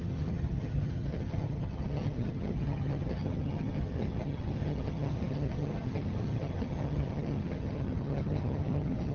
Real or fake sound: fake